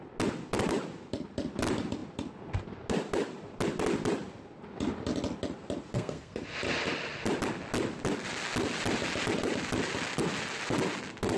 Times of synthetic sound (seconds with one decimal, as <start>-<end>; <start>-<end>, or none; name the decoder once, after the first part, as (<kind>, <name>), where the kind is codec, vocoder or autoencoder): 5.9-6.4 (codec, SNAC)